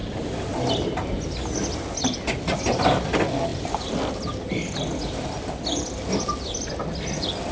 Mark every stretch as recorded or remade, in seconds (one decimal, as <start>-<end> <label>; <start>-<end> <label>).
0.0-7.5 recorded